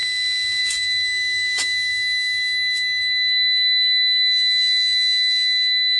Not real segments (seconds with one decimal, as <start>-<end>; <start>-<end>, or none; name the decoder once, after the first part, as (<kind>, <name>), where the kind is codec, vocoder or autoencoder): 0.6-6.0 (autoencoder, DAC-VAE)